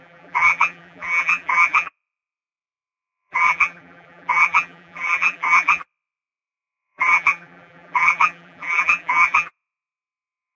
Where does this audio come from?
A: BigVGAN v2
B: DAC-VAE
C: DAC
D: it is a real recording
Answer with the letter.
A